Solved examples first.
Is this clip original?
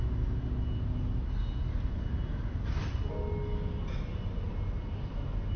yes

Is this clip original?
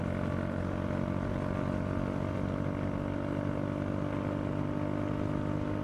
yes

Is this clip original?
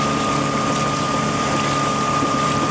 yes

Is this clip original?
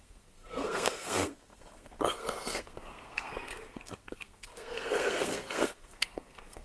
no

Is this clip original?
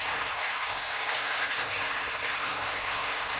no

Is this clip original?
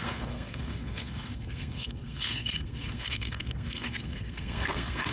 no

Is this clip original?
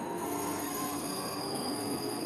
no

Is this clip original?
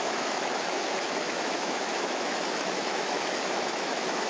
no